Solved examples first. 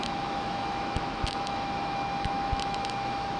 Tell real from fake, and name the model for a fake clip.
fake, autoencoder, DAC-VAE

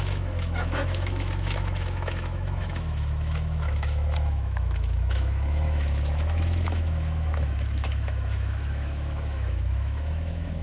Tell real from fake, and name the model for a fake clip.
fake, autoencoder, DAC-VAE